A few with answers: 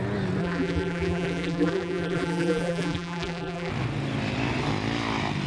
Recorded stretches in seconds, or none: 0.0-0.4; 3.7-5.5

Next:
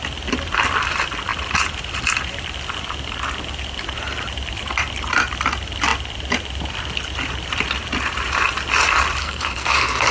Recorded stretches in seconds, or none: 0.0-9.2